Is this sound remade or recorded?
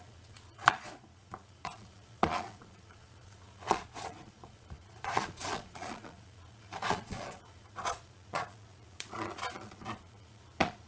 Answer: remade